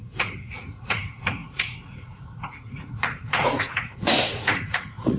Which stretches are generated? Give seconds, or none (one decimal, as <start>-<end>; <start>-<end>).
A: 0.0-5.2